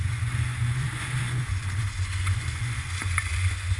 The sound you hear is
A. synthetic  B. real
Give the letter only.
A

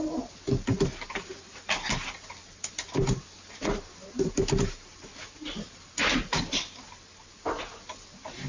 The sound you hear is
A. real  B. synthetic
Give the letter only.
A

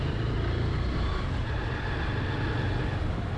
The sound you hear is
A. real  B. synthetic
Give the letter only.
A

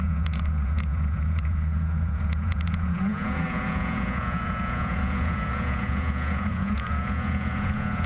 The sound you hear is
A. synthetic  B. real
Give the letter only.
A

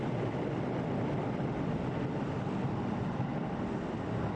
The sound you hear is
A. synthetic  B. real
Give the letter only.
B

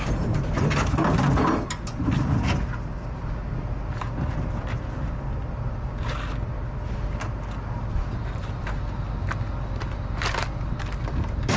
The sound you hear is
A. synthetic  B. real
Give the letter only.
B